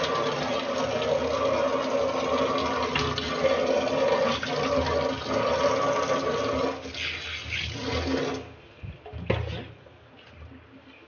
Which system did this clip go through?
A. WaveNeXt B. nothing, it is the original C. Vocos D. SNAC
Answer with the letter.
B